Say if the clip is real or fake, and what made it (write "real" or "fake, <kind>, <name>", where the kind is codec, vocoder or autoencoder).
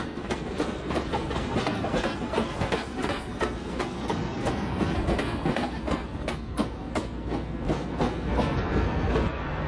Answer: fake, codec, SNAC